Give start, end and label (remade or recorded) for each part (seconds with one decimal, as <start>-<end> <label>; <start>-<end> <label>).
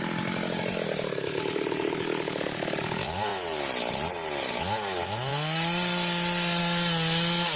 0.0-7.6 recorded